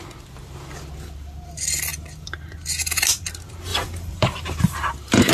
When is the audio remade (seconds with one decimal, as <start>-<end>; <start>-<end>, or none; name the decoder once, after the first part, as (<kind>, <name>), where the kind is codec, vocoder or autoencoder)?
3.7-5.3 (vocoder, BigVGAN v2)